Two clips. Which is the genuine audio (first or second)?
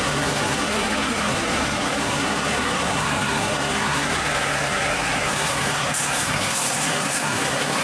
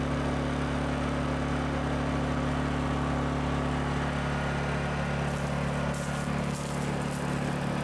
second